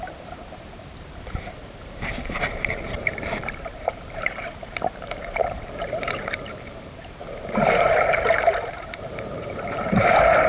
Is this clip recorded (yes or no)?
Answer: no